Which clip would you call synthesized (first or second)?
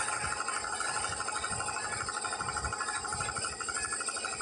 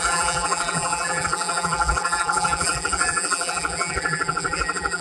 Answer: second